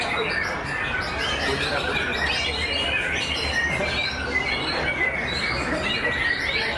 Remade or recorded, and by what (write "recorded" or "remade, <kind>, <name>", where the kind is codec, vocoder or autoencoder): recorded